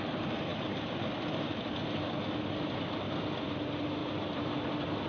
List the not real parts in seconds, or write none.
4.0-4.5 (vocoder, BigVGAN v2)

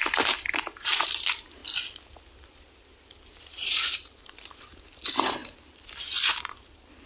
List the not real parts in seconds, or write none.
0.0-1.6 (vocoder, BigVGAN v2); 3.4-5.4; 6.4-7.1

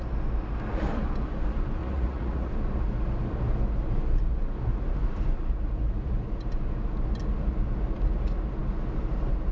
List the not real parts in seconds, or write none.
1.8-2.5 (vocoder, Vocos)

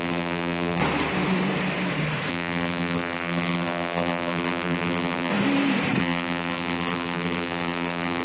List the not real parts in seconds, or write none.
0.0-0.8 (vocoder, BigVGAN v2); 2.3-5.3; 6.0-8.2

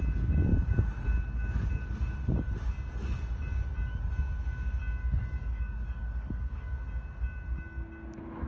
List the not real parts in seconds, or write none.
5.0-6.8 (codec, DAC)

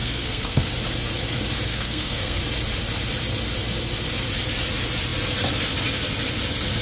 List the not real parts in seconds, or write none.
0.0-0.7 (codec, SNAC); 1.7-2.4

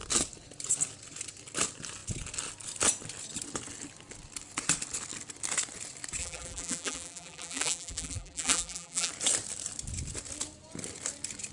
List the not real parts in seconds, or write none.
6.2-9.1 (vocoder, BigVGAN v2)